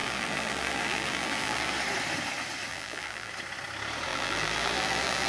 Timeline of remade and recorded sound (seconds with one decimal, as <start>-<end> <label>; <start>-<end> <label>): 0.0-1.7 remade; 1.7-2.7 recorded; 2.7-3.3 remade; 3.3-4.1 recorded; 4.1-5.3 remade